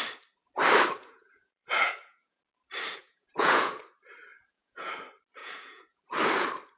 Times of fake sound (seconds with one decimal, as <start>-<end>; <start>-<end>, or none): 1.0-2.4; 3.0-3.7; 4.3-4.9; 5.4-6.0